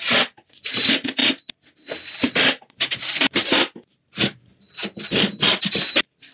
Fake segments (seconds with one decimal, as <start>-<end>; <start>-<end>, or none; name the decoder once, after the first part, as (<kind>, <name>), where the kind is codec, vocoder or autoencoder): none